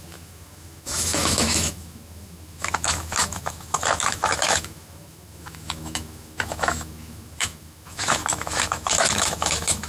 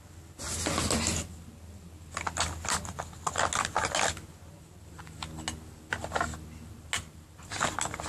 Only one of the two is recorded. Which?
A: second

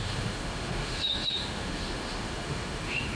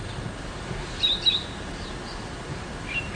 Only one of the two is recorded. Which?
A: second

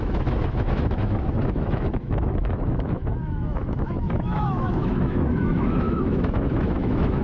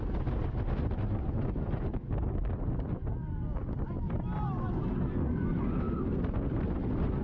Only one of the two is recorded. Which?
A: second